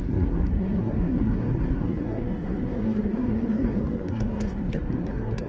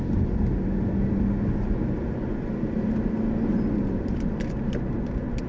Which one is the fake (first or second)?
first